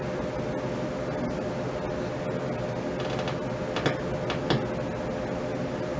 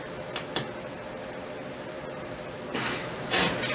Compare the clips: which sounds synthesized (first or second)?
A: second